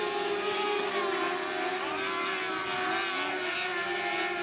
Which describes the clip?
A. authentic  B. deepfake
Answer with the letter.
A